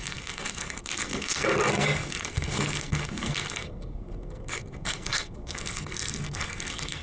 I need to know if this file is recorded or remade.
remade